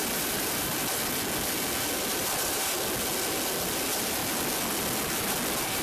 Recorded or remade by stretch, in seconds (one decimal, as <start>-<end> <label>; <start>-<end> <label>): 0.0-0.9 remade; 0.9-2.1 recorded; 2.1-2.7 remade; 2.7-5.8 recorded